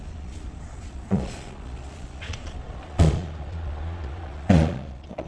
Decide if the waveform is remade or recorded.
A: remade